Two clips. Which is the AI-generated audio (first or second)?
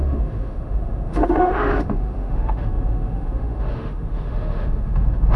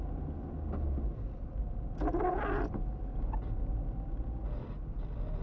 first